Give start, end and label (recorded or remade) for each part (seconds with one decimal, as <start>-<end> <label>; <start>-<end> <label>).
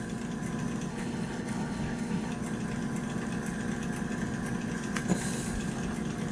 0.0-0.9 recorded; 0.9-2.3 remade; 2.3-6.3 recorded